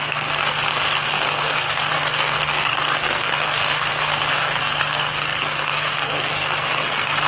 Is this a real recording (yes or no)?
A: no